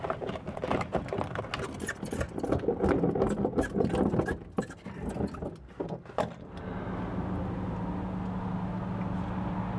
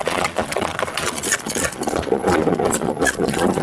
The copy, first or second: second